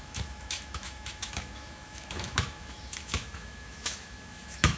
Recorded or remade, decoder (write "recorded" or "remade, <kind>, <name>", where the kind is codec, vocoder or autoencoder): remade, autoencoder, DAC-VAE